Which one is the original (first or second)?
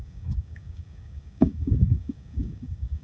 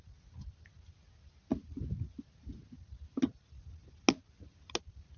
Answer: second